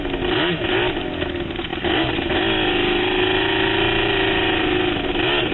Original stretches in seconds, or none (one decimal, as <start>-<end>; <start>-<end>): 0.0-5.5

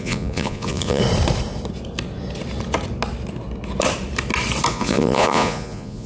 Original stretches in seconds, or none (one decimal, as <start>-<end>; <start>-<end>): 1.0-4.7

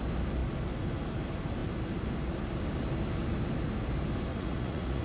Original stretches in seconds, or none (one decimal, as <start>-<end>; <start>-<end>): 0.0-4.3

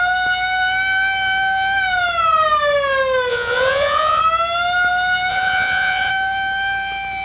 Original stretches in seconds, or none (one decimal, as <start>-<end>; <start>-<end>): 0.0-3.3; 4.2-5.3; 6.1-7.2

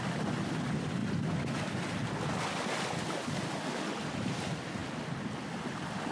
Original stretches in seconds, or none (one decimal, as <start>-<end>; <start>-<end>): 0.0-6.1